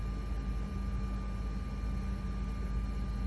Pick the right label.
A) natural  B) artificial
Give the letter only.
A